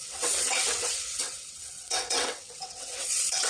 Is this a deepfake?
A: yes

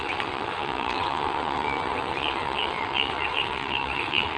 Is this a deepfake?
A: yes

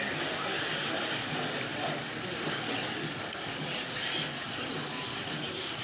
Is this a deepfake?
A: no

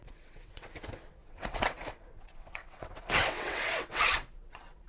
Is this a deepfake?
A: yes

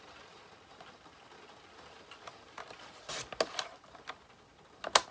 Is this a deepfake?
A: no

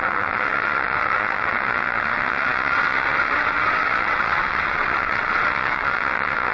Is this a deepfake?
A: yes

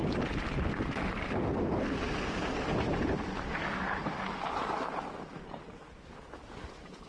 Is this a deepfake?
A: no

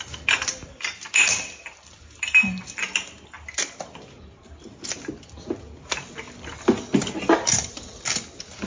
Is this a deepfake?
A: no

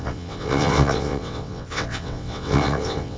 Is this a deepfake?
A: yes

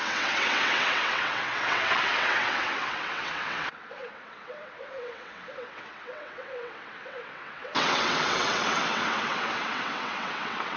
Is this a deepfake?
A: yes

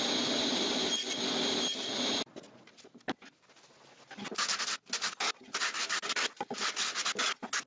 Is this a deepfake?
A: no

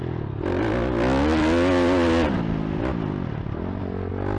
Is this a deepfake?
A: no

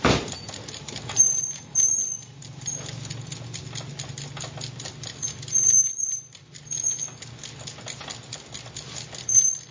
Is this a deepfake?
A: no